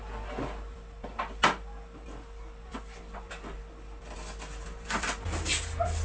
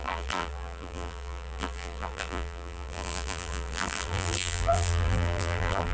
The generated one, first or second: second